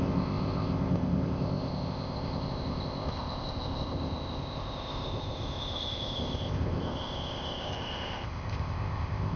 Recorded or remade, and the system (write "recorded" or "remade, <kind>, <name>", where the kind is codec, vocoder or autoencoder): remade, codec, ZipCodec